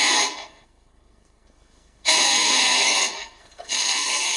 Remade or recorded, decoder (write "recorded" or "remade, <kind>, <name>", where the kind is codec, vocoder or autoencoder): remade, codec, SNAC